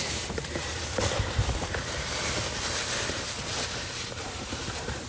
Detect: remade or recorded remade